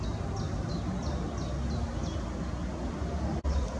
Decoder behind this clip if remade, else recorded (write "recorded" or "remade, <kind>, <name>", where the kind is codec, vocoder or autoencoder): recorded